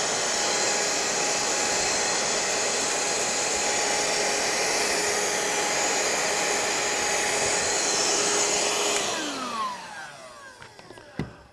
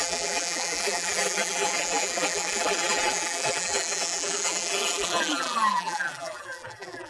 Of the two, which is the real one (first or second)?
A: first